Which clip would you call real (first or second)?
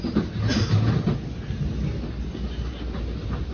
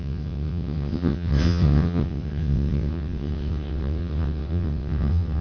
first